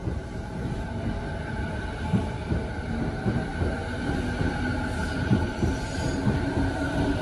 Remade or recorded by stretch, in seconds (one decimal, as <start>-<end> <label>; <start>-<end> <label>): 0.0-0.8 remade; 0.8-5.0 recorded; 5.0-5.7 remade; 5.7-7.2 recorded